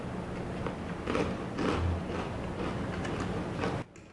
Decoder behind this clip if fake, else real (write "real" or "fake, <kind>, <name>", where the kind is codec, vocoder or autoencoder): real